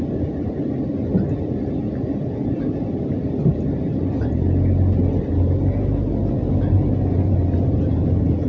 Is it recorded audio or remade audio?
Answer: recorded